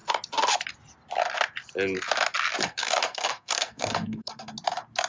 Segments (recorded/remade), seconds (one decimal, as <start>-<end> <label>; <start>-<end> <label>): 0.0-2.6 recorded; 2.6-4.5 remade; 4.5-5.1 recorded